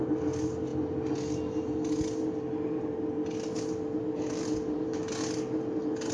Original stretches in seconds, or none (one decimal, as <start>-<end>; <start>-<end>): 0.0-6.1